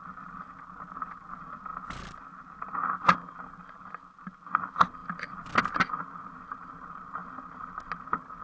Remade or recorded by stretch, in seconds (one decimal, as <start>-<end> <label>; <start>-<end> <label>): 0.0-8.4 recorded